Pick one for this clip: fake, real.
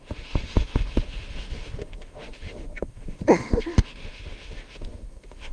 fake